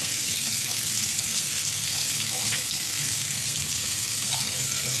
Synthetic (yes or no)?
yes